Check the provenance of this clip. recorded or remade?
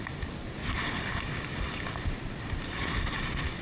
recorded